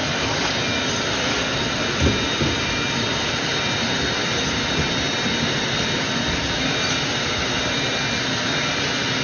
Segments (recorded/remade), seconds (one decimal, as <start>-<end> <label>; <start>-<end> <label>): 0.0-9.2 recorded